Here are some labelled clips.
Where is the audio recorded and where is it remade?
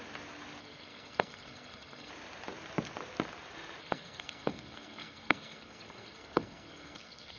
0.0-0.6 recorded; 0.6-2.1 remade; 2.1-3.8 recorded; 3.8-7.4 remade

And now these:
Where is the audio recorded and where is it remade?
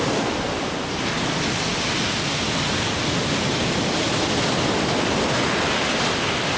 0.0-6.6 recorded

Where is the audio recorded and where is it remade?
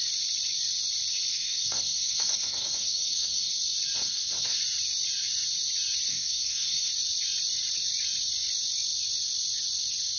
0.0-1.3 recorded; 1.3-3.5 remade; 3.5-4.0 recorded; 4.0-4.6 remade; 4.6-6.1 recorded; 6.1-6.9 remade; 6.9-10.2 recorded